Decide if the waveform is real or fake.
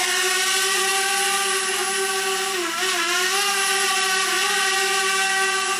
real